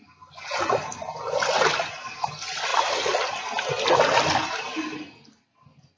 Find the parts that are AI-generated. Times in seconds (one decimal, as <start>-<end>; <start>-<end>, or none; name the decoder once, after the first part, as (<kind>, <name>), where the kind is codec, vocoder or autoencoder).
none